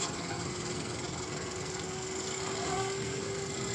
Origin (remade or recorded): remade